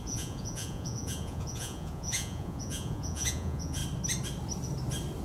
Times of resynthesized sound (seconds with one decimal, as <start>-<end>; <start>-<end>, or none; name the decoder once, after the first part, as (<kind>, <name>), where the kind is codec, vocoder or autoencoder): 0.0-3.8 (vocoder, Vocos)